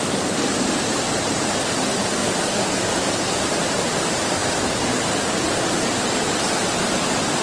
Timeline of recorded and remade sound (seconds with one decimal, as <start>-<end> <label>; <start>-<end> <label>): 0.0-2.2 remade; 2.2-3.3 recorded; 3.3-4.4 remade; 4.4-5.2 recorded; 5.2-7.4 remade